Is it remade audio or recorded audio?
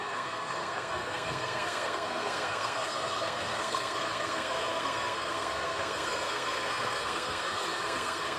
remade